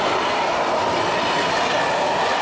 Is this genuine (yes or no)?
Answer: yes